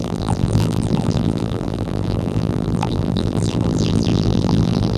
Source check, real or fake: fake